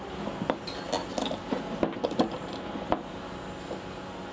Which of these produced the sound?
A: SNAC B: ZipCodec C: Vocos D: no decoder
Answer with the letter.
D